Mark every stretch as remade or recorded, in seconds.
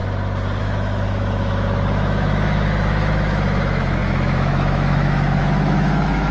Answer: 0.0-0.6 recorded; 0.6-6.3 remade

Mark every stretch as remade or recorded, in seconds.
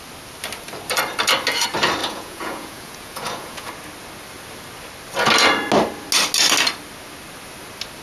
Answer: 0.0-2.0 recorded; 2.0-3.7 remade; 3.7-8.0 recorded